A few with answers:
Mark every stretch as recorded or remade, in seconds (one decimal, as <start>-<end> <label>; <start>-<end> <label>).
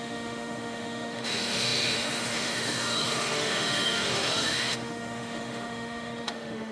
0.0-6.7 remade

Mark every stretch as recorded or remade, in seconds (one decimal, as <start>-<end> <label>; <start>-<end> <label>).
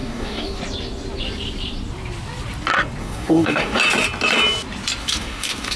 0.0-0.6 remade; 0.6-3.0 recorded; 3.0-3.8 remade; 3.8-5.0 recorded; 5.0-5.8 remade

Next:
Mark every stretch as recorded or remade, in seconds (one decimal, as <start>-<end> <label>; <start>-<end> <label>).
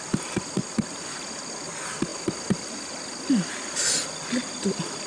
0.0-5.1 recorded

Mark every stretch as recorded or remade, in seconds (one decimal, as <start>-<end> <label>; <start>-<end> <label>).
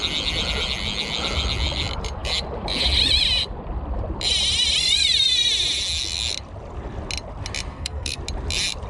0.0-7.7 recorded; 7.7-8.2 remade; 8.2-8.9 recorded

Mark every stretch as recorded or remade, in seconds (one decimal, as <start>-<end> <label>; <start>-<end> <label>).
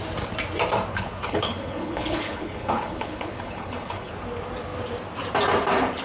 0.0-0.9 recorded; 0.9-4.1 remade; 4.1-6.0 recorded